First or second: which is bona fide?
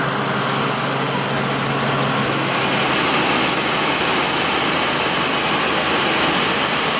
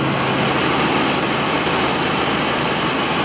first